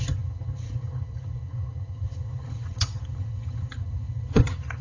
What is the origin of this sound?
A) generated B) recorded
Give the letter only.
A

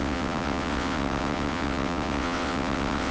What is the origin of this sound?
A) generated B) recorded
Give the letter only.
A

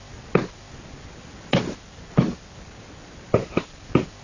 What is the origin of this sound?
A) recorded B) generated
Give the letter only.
A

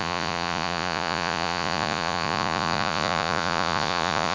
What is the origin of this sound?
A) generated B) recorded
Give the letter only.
A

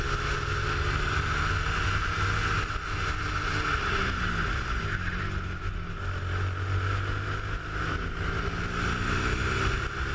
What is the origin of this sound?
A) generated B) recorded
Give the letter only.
B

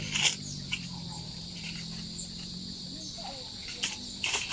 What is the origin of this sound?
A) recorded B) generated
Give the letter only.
A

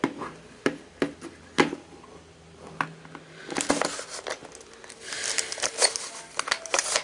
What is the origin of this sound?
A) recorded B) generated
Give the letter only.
A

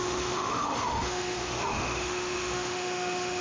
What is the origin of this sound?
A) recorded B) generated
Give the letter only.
B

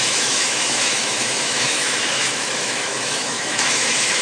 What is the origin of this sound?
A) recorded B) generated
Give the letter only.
B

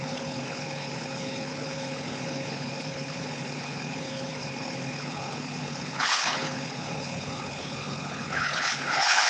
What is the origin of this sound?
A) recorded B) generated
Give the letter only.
B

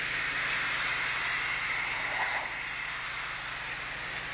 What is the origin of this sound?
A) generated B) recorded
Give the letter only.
B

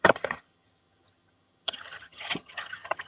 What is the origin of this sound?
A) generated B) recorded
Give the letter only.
A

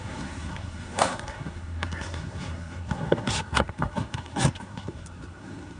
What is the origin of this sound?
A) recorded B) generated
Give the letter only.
B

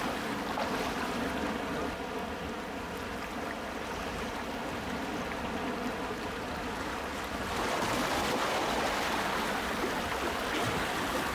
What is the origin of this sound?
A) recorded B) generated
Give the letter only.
A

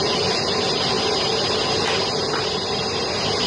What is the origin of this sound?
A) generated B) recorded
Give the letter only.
B